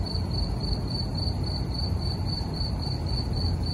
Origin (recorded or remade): remade